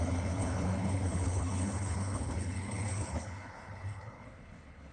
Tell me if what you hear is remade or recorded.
remade